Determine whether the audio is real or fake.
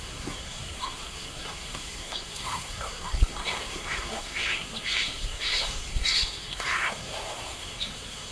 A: fake